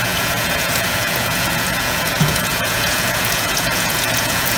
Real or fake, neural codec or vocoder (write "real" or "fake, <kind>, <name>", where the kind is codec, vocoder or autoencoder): fake, vocoder, Vocos